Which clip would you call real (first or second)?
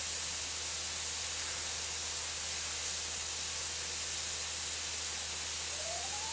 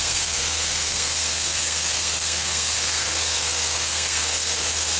first